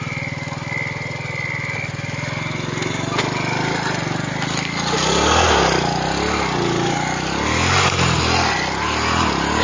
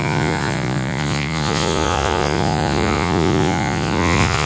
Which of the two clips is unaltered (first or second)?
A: first